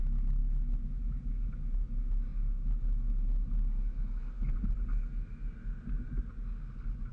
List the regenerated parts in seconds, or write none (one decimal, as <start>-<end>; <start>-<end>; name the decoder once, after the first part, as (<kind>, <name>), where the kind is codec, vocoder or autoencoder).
none